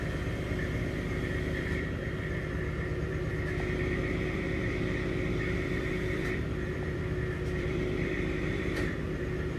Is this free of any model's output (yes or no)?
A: no